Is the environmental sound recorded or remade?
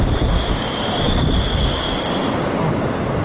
recorded